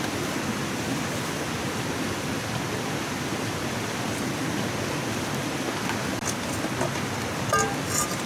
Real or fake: real